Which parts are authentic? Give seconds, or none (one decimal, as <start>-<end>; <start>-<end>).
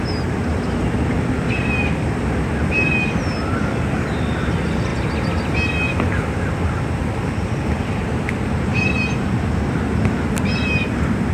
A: 0.0-11.3